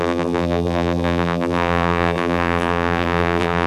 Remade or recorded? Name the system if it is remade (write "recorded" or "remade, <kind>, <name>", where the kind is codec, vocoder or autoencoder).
remade, vocoder, BigVGAN v2